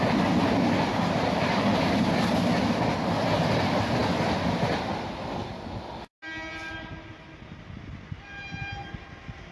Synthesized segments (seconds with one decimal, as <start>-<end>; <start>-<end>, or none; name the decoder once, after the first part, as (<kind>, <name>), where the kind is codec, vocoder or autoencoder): none